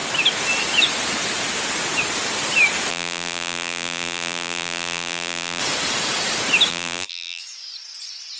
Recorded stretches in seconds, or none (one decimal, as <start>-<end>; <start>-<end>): 0.0-2.9; 5.6-6.7; 7.4-8.4